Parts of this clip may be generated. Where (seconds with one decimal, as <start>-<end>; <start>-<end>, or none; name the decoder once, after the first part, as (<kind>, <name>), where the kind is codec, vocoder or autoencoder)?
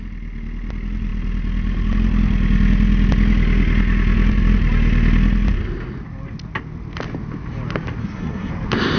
8.0-8.5 (codec, SNAC)